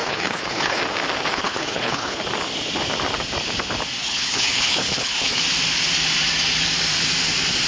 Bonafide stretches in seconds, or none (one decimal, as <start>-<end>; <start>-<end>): 0.8-1.3; 2.2-4.0; 5.4-7.7